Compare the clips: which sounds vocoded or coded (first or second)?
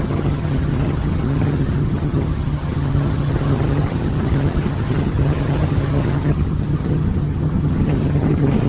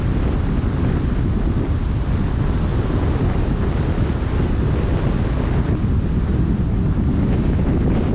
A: first